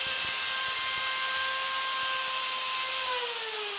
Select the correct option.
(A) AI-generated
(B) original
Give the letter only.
B